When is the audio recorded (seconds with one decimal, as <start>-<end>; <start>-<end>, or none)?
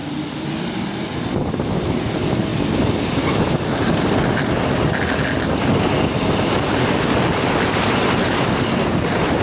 0.7-9.4